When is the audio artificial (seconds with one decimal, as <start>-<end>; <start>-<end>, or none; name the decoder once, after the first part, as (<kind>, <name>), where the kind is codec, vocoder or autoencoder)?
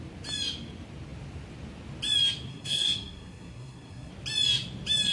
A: 2.5-4.1 (codec, SNAC)